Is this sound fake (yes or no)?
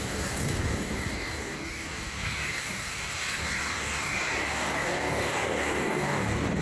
yes